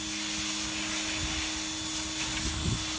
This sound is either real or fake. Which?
real